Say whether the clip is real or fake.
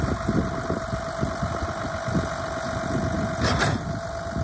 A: real